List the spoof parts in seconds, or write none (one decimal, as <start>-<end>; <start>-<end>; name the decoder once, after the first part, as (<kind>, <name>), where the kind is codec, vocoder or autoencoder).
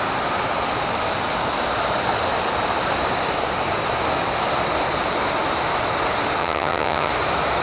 6.4-7.1 (vocoder, HiFi-GAN)